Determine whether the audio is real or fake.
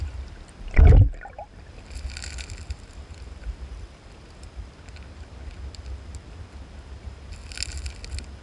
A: real